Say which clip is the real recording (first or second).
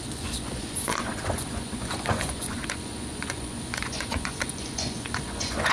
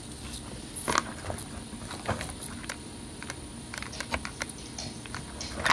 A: second